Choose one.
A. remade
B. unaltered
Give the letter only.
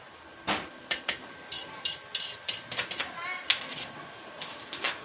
B